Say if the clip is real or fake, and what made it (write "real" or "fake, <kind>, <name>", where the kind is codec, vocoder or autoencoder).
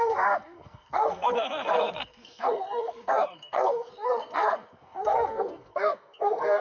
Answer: fake, codec, SNAC